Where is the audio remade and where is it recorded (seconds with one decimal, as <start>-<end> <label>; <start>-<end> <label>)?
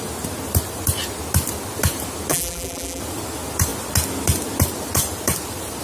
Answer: 0.0-2.3 recorded; 2.3-3.0 remade; 3.0-5.8 recorded